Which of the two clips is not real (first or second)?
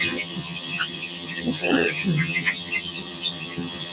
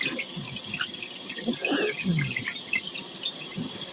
first